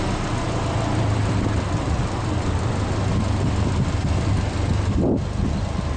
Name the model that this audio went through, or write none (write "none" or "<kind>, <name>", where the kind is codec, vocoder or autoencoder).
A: none